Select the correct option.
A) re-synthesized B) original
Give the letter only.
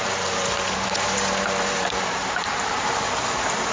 A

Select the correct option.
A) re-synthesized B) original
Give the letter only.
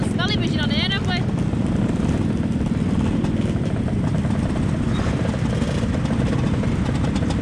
B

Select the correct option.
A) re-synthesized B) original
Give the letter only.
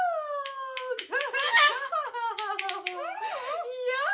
B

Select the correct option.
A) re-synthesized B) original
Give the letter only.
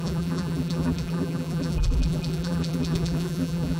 A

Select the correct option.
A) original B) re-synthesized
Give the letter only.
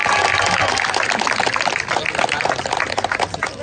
A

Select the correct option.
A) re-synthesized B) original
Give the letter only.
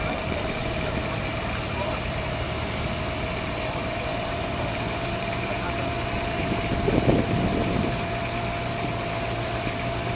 A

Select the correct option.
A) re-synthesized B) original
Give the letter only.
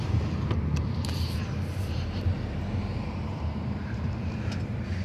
A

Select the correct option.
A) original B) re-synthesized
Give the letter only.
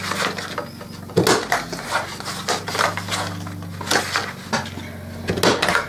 A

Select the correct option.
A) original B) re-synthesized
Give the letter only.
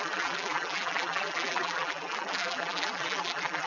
B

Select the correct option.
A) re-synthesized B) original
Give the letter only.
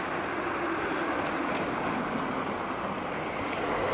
B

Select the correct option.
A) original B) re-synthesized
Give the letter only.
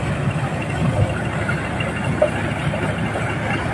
A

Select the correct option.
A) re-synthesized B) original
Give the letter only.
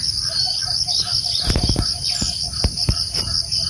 B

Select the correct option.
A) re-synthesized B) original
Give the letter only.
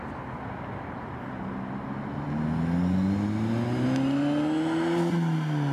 B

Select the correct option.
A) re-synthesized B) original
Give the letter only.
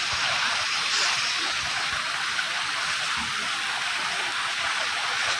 B